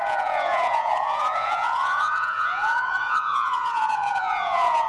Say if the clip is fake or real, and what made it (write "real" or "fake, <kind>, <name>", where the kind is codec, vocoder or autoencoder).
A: fake, vocoder, Vocos